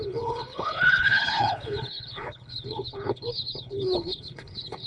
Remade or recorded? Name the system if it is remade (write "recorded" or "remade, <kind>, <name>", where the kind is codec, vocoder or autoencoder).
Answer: remade, codec, HILCodec